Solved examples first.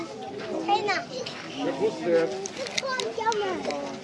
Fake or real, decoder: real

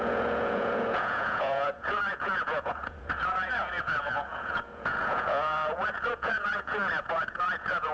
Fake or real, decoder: fake, vocoder, Vocos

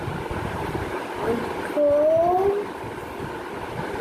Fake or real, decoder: real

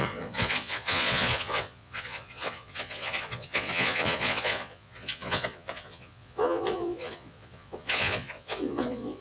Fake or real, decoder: fake, vocoder, Vocos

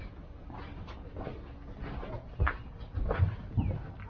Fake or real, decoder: real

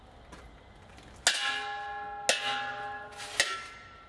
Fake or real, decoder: real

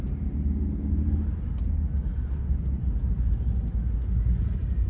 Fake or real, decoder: real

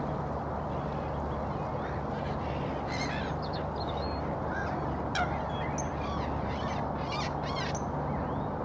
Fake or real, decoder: real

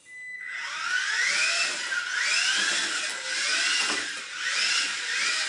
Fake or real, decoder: real